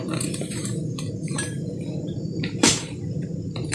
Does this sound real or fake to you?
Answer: fake